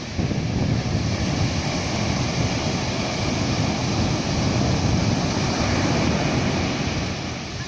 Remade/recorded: recorded